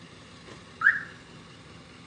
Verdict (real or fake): real